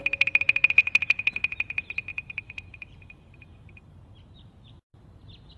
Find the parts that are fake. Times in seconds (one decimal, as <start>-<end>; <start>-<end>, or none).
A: 2.1-4.7